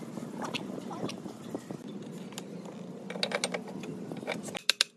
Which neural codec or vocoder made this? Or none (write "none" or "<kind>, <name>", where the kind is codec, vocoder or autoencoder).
none